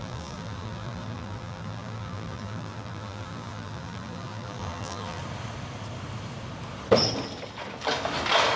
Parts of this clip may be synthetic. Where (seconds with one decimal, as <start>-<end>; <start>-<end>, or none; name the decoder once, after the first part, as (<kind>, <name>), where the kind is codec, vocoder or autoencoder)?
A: 0.0-5.2 (vocoder, BigVGAN v2)